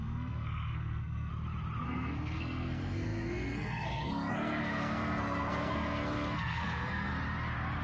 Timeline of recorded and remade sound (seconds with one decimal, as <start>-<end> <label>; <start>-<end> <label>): 0.0-1.3 remade; 1.3-1.8 recorded; 1.8-7.1 remade; 7.1-7.8 recorded